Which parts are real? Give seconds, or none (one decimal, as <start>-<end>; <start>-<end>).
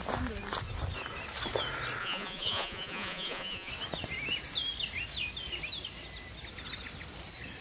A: 0.0-2.0; 3.7-7.6